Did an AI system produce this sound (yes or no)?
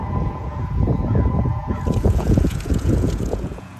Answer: yes